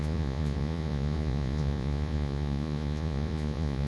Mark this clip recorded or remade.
remade